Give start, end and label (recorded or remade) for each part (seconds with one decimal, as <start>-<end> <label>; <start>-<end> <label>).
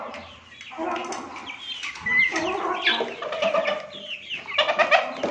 0.0-5.3 recorded